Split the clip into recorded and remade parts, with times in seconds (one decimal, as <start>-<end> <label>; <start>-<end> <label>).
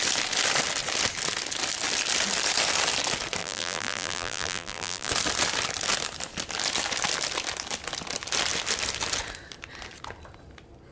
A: 0.0-3.4 recorded; 3.4-5.1 remade; 5.1-10.9 recorded